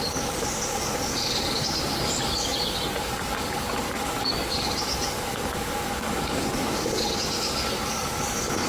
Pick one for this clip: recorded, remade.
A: remade